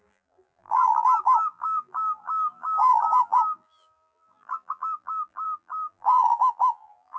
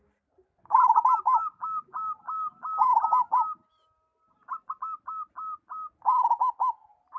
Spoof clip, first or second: first